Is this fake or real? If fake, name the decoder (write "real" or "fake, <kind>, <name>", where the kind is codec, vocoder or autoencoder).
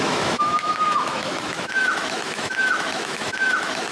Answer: fake, autoencoder, DAC-VAE